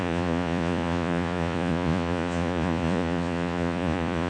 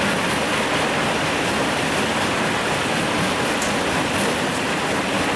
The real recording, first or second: second